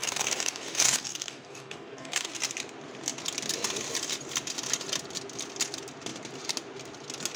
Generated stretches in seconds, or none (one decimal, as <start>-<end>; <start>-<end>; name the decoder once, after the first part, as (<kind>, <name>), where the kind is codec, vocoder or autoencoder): 0.0-2.3 (codec, DAC)